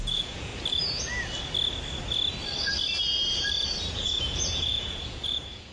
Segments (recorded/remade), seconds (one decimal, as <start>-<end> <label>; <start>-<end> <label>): 0.0-0.5 remade; 0.5-3.9 recorded; 3.9-5.7 remade